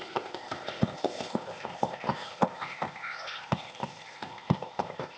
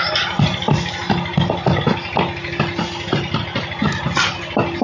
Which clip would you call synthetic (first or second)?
first